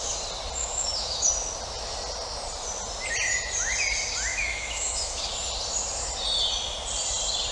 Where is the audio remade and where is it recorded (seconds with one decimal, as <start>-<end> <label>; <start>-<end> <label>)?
0.0-0.6 recorded; 0.6-1.3 remade; 1.3-4.3 recorded; 4.3-5.2 remade; 5.2-7.5 recorded